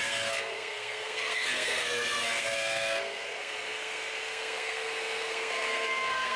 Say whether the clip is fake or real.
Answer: fake